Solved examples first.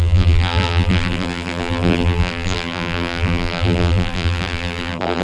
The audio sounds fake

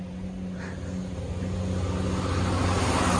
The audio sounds real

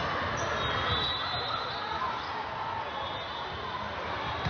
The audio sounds real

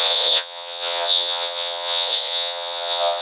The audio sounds fake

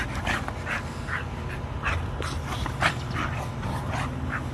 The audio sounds real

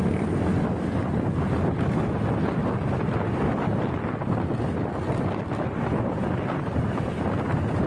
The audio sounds real